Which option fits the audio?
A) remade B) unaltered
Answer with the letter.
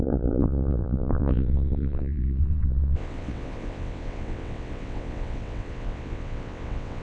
A